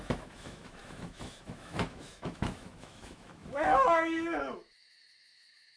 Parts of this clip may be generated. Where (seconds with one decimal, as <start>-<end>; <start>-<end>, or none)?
0.0-5.8